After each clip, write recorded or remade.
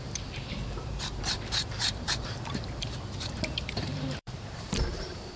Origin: remade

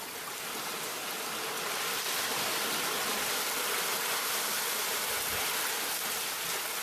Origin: recorded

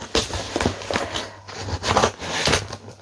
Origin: recorded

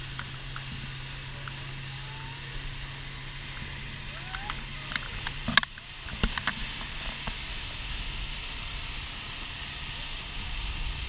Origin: recorded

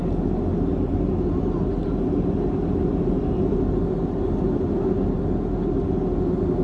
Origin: recorded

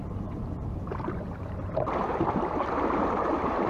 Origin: remade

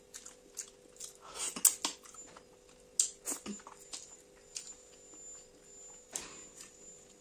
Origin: recorded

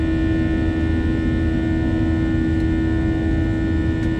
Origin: recorded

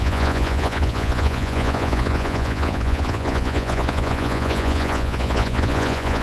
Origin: remade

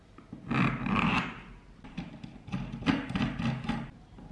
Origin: recorded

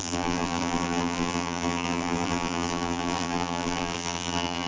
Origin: remade